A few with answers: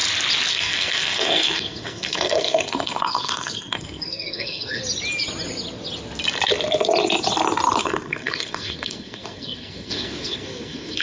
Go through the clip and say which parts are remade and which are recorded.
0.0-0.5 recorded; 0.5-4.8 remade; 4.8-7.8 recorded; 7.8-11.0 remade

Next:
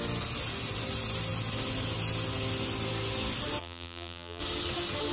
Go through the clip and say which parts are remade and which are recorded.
0.0-3.6 recorded; 3.6-4.4 remade; 4.4-5.1 recorded

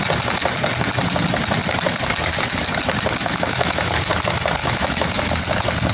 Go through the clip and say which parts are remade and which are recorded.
0.0-3.2 recorded; 3.2-3.9 remade; 3.9-4.6 recorded; 4.6-5.3 remade; 5.3-5.9 recorded

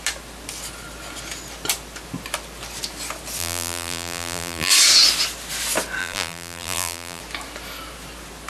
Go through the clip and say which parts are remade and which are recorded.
0.0-3.4 recorded; 3.4-4.7 remade; 4.7-6.0 recorded; 6.0-7.2 remade; 7.2-8.5 recorded

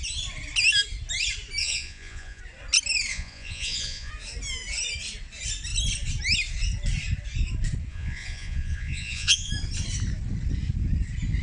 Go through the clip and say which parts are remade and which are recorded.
0.0-1.6 recorded; 1.6-2.4 remade; 2.4-3.1 recorded; 3.1-4.1 remade; 4.1-7.9 recorded; 7.9-9.5 remade; 9.5-11.4 recorded

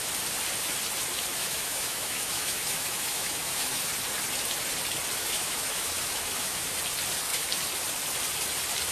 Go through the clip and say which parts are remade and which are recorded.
0.0-1.3 recorded; 1.3-3.9 remade; 3.9-5.2 recorded; 5.2-6.7 remade; 6.7-8.9 recorded

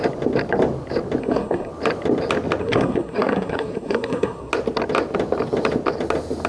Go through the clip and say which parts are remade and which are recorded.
0.0-1.2 recorded; 1.2-1.7 remade; 1.7-2.6 recorded; 2.6-4.5 remade; 4.5-6.5 recorded

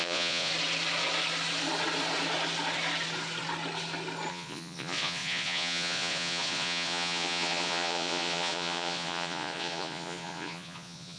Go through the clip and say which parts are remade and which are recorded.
0.0-0.5 remade; 0.5-4.3 recorded; 4.3-11.2 remade